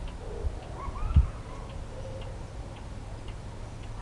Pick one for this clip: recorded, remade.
recorded